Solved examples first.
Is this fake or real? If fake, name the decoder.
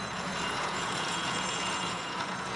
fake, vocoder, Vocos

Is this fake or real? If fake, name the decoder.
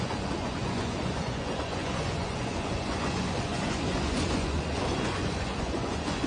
fake, vocoder, Vocos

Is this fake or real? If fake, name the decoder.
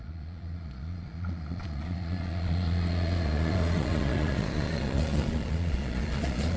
fake, vocoder, Vocos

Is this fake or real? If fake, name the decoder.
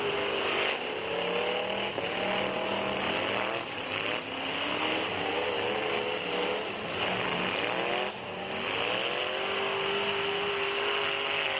real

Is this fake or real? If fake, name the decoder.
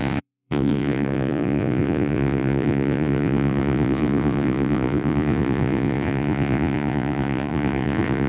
fake, vocoder, Vocos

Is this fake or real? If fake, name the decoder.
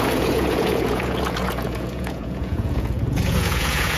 fake, vocoder, Vocos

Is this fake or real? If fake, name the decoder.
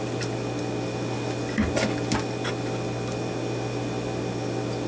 real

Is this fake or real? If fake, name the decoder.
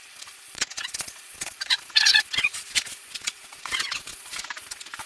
fake, vocoder, Vocos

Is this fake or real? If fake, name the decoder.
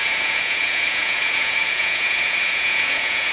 fake, vocoder, Vocos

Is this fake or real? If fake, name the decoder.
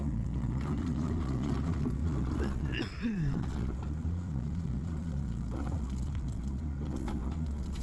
fake, vocoder, Vocos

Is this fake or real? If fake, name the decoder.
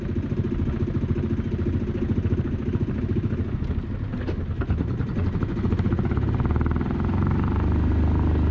real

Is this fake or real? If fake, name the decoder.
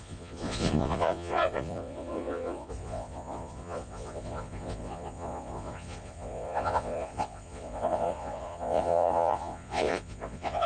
fake, vocoder, Vocos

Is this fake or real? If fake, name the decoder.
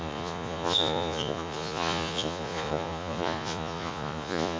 fake, vocoder, Vocos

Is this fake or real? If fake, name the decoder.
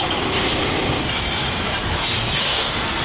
real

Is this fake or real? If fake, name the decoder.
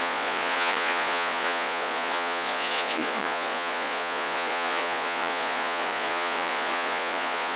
fake, vocoder, Vocos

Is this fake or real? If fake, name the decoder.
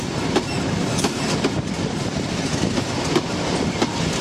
real